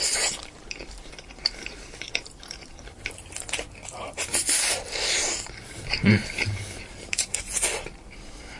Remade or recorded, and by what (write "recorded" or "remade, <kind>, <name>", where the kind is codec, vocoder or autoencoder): remade, vocoder, BigVGAN v2